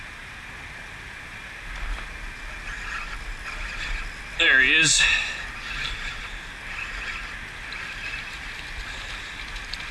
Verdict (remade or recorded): recorded